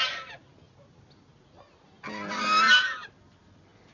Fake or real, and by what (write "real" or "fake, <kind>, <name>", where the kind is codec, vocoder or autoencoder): real